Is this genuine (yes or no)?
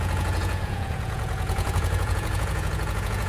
no